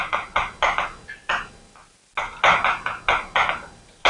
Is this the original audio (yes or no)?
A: yes